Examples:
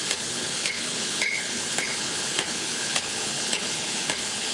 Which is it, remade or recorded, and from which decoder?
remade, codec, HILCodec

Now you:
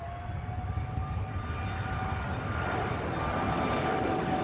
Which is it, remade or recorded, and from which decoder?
recorded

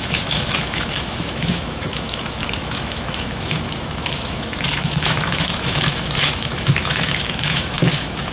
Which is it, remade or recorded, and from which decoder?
remade, autoencoder, DAC-VAE